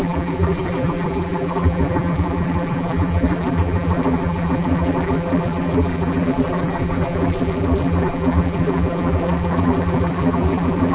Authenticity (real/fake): fake